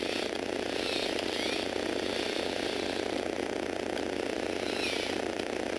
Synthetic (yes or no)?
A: no